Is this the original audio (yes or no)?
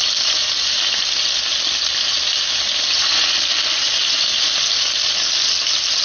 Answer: yes